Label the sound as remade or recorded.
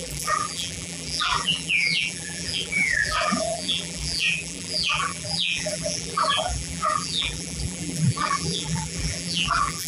remade